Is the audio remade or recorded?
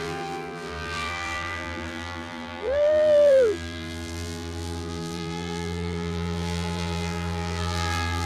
remade